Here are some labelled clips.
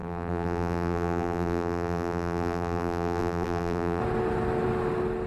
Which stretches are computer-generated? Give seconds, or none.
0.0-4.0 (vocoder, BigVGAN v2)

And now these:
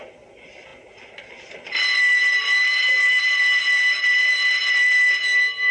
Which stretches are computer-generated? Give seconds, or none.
none

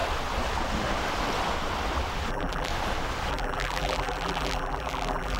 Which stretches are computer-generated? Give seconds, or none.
2.3-2.7 (vocoder, BigVGAN v2); 3.3-5.4